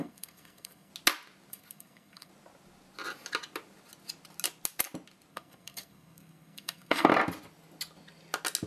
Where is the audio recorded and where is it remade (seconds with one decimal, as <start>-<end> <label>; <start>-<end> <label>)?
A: 0.0-0.9 remade; 0.9-1.5 recorded; 1.5-2.3 remade; 2.3-5.3 recorded; 5.3-7.1 remade; 7.1-8.7 recorded